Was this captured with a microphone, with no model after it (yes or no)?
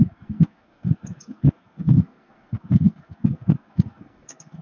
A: no